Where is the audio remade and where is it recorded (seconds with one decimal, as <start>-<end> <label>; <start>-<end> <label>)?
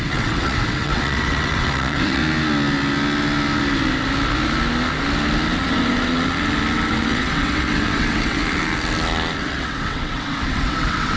0.0-2.2 remade; 2.2-6.9 recorded; 6.9-8.4 remade; 8.4-9.4 recorded; 9.4-11.2 remade